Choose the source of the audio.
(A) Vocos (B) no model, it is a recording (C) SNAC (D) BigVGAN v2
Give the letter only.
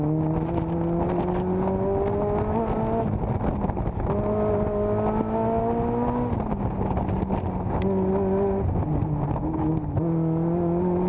B